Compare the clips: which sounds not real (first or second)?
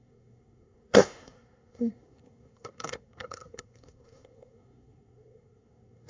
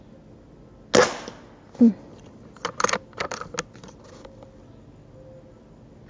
first